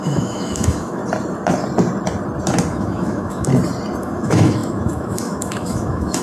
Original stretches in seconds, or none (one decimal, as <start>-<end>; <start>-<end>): 1.0-2.7; 3.5-4.0